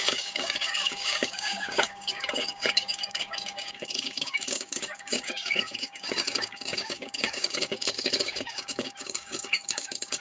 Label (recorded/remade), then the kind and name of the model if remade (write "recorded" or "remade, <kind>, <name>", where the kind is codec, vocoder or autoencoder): remade, codec, DAC